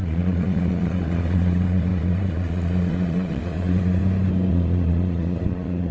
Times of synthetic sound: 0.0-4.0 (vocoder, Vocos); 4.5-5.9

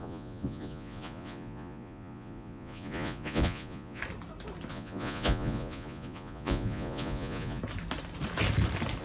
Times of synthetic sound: 0.0-4.0 (vocoder, Vocos); 4.7-7.6

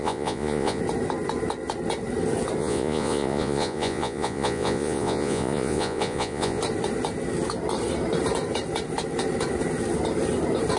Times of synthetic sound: 0.0-0.8 (vocoder, Vocos); 2.6-6.6

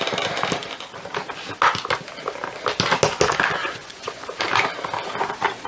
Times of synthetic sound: 3.6-4.4 (vocoder, Vocos)

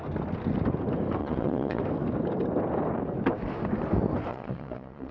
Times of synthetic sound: 1.2-1.8 (vocoder, Vocos); 4.3-5.1

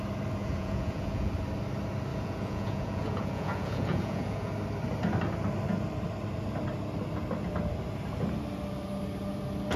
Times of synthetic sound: 0.4-1.3 (vocoder, Vocos); 2.1-4.5

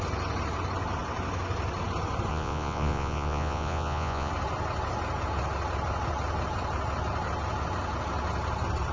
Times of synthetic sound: 2.3-4.3 (vocoder, Vocos)